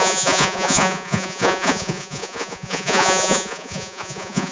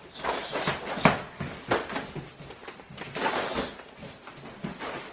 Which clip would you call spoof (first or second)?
first